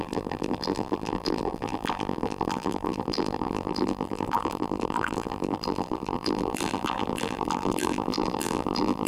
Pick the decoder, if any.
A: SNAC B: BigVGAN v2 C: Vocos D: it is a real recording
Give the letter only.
B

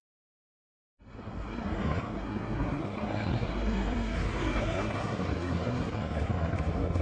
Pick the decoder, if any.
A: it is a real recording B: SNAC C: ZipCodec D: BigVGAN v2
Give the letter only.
B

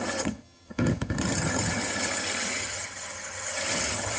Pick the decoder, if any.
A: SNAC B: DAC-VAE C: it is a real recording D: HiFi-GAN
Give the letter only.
D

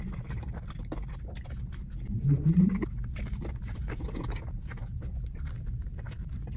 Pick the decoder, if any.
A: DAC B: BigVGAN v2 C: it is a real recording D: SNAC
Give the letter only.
B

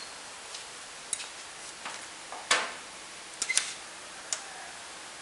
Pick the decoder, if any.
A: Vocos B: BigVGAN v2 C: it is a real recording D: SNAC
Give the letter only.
C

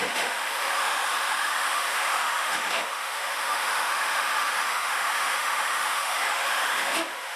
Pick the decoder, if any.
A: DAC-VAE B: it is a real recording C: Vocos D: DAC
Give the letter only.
A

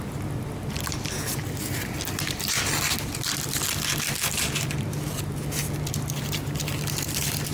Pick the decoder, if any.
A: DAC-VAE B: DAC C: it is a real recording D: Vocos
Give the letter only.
C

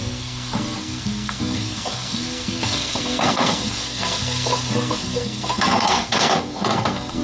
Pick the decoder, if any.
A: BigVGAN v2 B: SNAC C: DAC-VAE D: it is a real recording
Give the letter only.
B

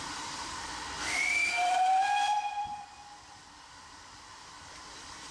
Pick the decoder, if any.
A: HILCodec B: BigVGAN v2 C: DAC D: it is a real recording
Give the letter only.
B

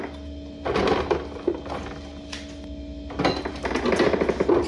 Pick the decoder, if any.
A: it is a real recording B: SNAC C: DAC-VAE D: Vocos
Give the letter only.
A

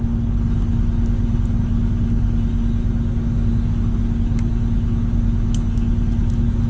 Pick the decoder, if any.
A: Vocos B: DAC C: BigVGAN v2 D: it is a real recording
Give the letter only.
D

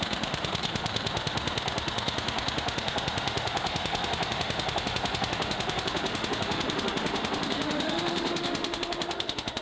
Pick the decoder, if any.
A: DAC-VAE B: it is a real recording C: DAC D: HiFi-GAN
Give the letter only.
A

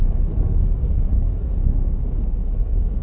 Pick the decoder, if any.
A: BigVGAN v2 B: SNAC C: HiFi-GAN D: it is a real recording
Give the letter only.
B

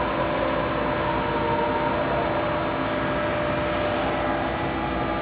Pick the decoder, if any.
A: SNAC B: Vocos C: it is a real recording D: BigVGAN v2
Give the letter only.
C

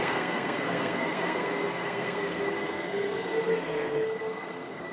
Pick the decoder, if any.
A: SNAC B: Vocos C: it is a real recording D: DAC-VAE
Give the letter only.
A